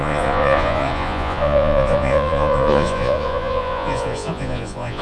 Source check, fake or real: fake